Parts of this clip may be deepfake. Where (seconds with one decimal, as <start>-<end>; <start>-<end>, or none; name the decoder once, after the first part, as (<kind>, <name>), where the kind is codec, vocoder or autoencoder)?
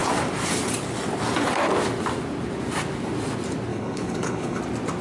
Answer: 3.7-4.6 (codec, HILCodec)